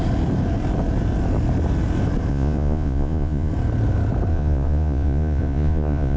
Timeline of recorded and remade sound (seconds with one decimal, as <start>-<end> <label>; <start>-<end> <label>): 0.0-2.3 recorded; 2.3-3.5 remade; 3.5-4.3 recorded; 4.3-6.2 remade